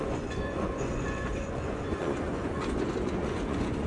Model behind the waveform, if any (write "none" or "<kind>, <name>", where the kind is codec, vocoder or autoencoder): vocoder, Vocos